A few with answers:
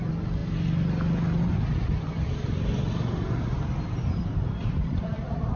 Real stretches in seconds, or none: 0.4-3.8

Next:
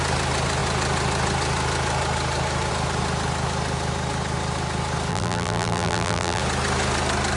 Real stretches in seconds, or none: 0.0-5.1; 6.4-7.4

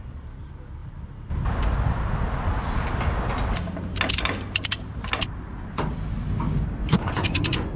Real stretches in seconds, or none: 0.0-6.8

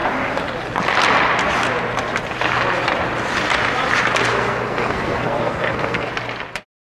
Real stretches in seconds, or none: 0.0-4.3; 6.1-6.9